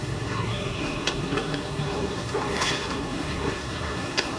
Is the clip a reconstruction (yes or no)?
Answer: yes